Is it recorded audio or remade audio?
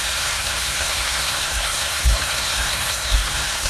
remade